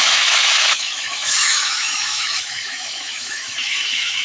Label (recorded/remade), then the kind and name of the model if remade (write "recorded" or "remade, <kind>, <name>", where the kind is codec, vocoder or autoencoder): remade, autoencoder, DAC-VAE